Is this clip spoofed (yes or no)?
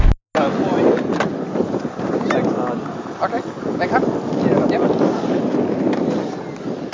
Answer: no